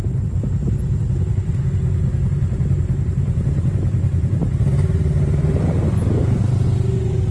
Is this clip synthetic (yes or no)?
no